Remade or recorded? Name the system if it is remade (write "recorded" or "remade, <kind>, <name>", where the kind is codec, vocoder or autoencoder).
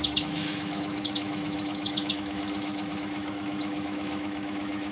remade, autoencoder, DAC-VAE